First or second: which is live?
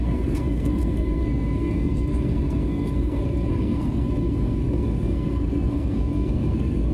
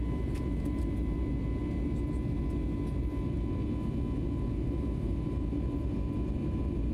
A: second